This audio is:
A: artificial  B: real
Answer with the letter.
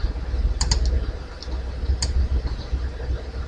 B